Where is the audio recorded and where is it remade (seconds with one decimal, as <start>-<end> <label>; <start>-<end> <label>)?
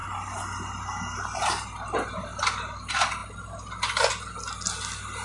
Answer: 0.0-5.2 recorded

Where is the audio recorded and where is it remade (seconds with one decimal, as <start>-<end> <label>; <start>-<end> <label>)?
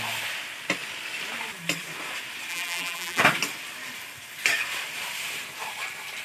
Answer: 0.0-2.5 recorded; 2.5-3.2 remade; 3.2-6.2 recorded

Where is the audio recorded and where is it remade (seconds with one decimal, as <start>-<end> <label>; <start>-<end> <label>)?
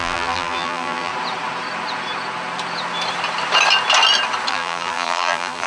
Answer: 0.0-1.1 remade; 1.1-4.5 recorded; 4.5-5.7 remade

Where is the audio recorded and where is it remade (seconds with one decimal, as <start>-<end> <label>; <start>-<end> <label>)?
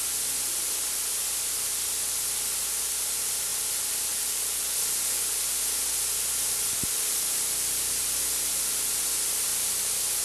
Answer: 0.0-10.2 recorded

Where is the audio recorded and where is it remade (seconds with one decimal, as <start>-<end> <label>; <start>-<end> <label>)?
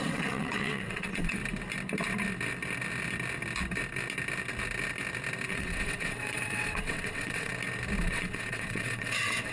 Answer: 0.0-1.4 remade; 1.4-5.5 recorded; 5.5-7.5 remade; 7.5-8.0 recorded; 8.0-9.5 remade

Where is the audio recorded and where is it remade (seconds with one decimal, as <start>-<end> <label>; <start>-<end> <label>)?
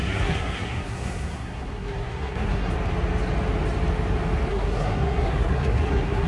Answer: 0.0-2.7 remade; 2.7-4.5 recorded; 4.5-6.3 remade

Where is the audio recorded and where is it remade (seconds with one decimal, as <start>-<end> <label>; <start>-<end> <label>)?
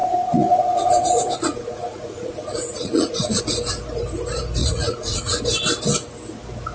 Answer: 0.0-3.4 remade; 3.4-4.6 recorded; 4.6-5.4 remade; 5.4-6.7 recorded